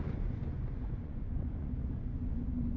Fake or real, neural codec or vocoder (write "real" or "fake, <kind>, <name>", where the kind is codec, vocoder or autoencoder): fake, vocoder, Vocos